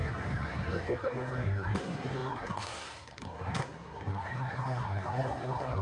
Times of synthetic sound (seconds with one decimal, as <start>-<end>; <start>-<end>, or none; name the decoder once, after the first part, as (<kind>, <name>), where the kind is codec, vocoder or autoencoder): 0.0-5.8 (codec, SNAC)